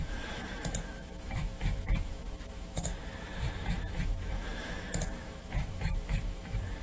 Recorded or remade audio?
remade